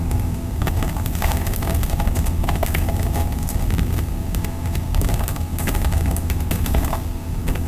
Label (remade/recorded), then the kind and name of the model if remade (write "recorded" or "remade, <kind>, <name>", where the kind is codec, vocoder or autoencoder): remade, codec, SNAC